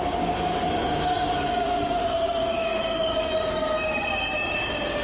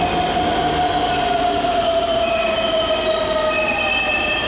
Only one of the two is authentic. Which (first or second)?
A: second